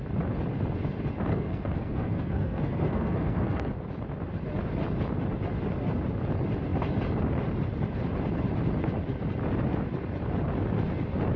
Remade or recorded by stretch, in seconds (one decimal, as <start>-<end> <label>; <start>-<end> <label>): 0.0-1.3 recorded; 1.3-3.7 remade; 3.7-11.4 recorded